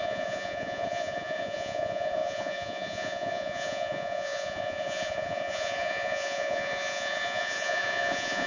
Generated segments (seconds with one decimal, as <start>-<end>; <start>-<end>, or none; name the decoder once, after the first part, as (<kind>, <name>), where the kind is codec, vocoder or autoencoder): 0.0-8.5 (vocoder, Vocos)